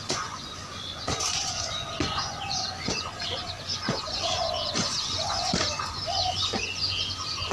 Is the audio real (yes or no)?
no